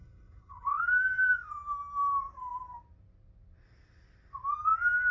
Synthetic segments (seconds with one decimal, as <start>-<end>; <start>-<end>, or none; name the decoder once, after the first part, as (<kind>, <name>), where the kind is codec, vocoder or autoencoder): 0.0-0.8 (codec, HILCodec)